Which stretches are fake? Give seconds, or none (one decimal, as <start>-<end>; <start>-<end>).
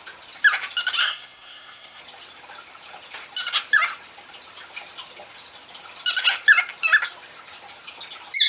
1.0-2.0